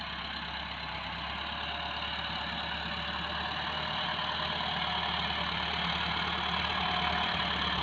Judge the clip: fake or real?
real